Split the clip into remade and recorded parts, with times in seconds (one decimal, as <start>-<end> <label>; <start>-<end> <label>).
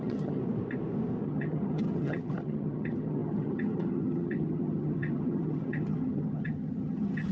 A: 0.0-0.4 remade; 0.4-1.2 recorded; 1.2-7.3 remade